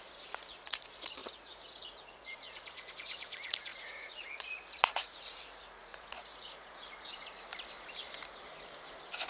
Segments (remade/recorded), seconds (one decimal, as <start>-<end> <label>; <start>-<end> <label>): 0.0-7.5 remade; 7.5-9.3 recorded